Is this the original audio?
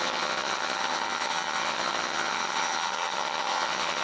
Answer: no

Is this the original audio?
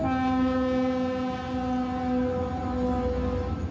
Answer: yes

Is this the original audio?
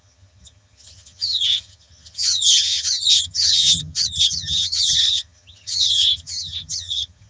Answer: no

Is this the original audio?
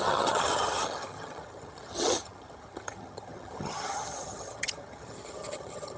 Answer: no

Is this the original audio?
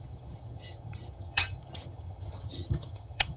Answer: no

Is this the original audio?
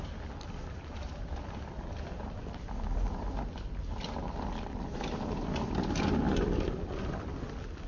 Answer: yes